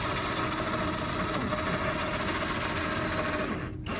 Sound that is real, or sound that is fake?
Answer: real